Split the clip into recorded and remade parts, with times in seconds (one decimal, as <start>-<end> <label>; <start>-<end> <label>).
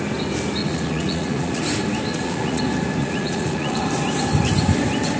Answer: 0.0-0.6 recorded; 0.6-1.6 remade; 1.6-2.1 recorded; 2.1-2.6 remade; 2.6-3.0 recorded; 3.0-3.8 remade; 3.8-5.2 recorded